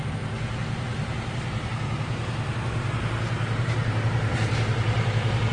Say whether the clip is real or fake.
fake